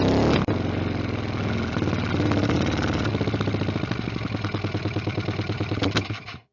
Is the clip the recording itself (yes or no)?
yes